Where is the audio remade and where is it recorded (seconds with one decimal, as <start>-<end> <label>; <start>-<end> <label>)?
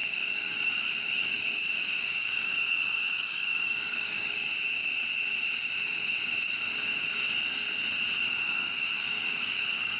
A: 0.0-4.5 remade; 4.5-8.3 recorded; 8.3-10.0 remade